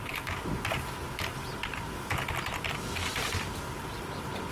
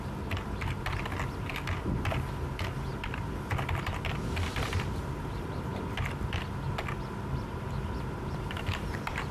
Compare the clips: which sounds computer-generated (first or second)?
first